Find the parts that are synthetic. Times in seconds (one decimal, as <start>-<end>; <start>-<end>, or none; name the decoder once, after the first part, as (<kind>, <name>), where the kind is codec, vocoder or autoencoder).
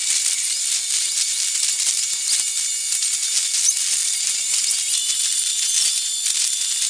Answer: none